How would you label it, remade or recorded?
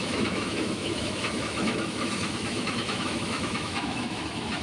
remade